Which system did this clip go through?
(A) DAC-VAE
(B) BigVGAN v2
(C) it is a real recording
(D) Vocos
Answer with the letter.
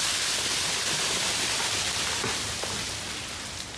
C